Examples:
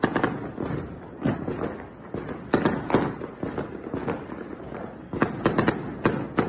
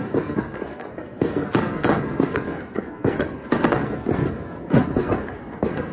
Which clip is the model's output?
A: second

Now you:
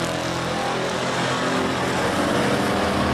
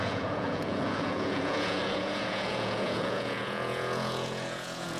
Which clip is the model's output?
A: second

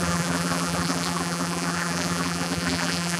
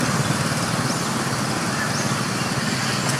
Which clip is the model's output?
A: first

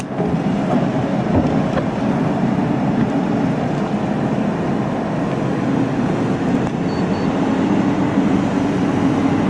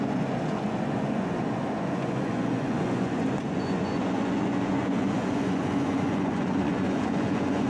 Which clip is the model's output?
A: second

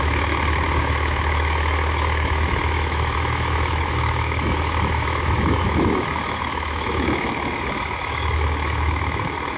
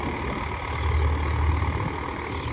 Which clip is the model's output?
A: first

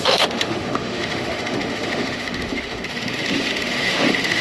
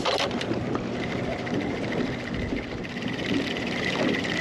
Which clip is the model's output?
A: first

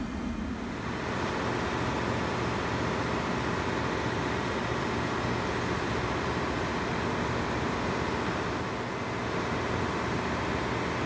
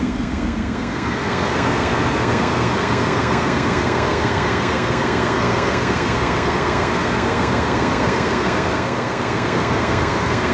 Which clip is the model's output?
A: second